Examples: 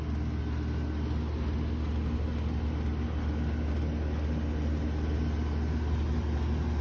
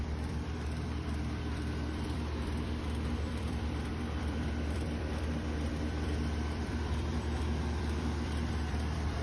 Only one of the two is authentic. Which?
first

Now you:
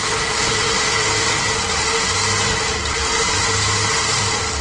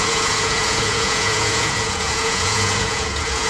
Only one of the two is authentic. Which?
first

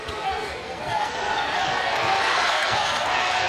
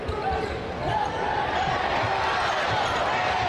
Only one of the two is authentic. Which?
second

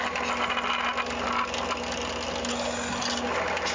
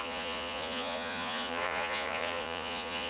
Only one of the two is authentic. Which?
first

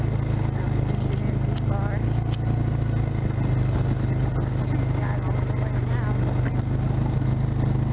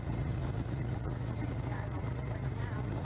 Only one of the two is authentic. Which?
first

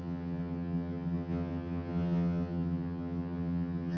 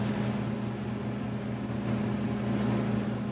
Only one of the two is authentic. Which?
second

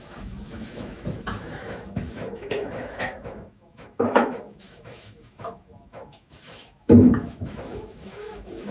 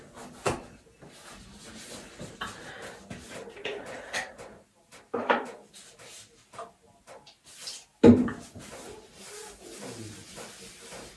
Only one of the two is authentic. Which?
second